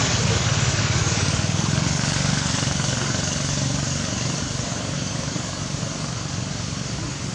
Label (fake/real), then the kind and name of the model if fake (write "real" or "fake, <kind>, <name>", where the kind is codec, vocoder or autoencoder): fake, codec, DAC